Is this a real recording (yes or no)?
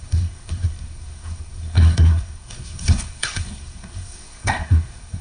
no